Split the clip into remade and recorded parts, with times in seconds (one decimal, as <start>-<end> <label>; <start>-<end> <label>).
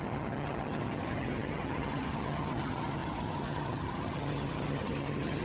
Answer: 0.0-5.4 remade